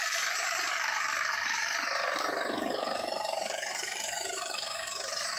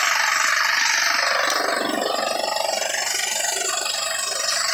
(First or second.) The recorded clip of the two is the second